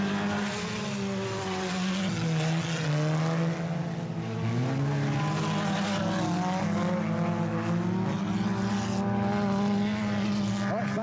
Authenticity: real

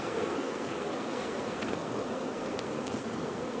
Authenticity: fake